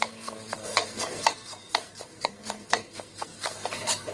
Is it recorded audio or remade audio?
remade